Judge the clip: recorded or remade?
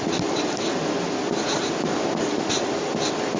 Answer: recorded